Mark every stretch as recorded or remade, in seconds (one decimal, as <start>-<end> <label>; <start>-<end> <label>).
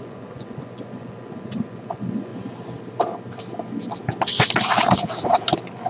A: 0.0-2.3 remade; 2.3-5.9 recorded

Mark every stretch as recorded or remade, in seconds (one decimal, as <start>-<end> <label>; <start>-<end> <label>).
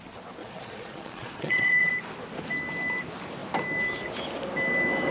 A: 0.0-0.4 recorded; 0.4-1.9 remade; 1.9-5.1 recorded